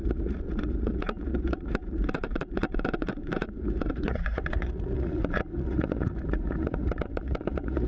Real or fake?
fake